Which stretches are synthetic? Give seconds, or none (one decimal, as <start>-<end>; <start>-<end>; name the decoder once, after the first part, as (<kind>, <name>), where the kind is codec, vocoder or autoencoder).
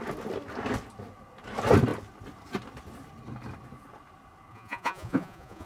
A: 4.5-5.7 (vocoder, Vocos)